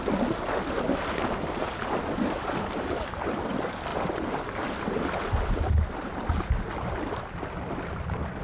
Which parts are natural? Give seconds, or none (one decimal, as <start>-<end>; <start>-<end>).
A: 0.0-8.4